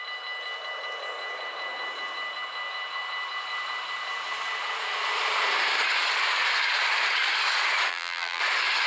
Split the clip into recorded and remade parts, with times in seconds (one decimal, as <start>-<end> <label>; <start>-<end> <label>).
0.0-7.9 recorded; 7.9-8.4 remade; 8.4-8.9 recorded